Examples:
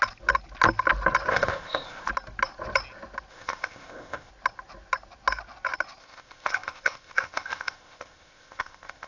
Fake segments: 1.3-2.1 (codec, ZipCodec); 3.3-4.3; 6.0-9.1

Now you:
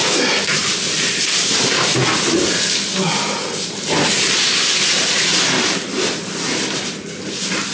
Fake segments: none

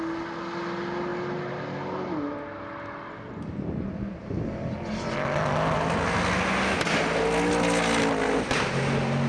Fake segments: none

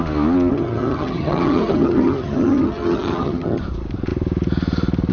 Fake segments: 0.5-3.6 (vocoder, HiFi-GAN)